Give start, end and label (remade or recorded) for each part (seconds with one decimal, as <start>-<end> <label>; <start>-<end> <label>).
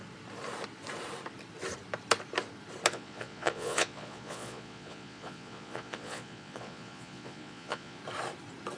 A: 0.0-2.9 recorded; 2.9-8.0 remade; 8.0-8.8 recorded